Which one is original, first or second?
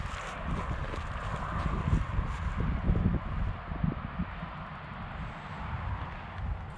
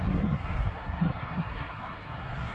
first